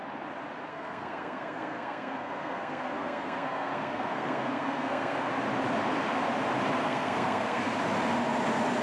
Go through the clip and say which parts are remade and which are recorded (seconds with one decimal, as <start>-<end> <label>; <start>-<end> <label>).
0.0-0.7 recorded; 0.7-5.3 remade; 5.3-6.8 recorded; 6.8-7.6 remade; 7.6-8.8 recorded